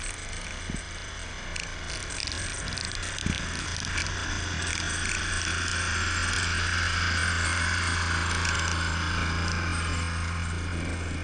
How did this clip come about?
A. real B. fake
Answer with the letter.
A